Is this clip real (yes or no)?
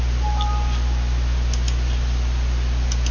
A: yes